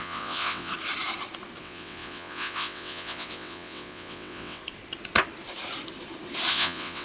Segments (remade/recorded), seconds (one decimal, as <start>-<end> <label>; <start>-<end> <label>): 0.0-0.7 remade; 0.7-1.6 recorded; 1.6-4.6 remade; 4.6-6.5 recorded; 6.5-7.0 remade